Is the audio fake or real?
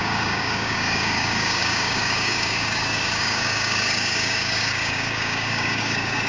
fake